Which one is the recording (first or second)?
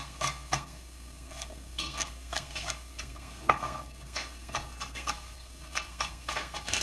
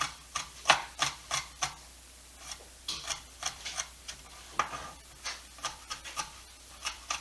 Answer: second